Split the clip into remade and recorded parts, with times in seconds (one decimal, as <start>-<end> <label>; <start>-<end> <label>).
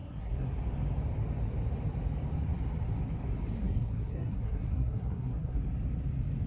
0.0-0.6 remade; 0.6-3.6 recorded; 3.6-5.6 remade; 5.6-6.5 recorded